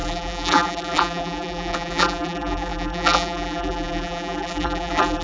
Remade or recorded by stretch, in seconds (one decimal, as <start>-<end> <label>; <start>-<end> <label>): 0.0-5.2 remade